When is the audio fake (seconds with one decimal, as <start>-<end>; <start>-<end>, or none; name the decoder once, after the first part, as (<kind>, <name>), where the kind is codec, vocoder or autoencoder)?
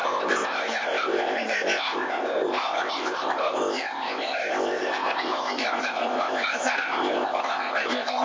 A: 0.0-8.2 (codec, ZipCodec)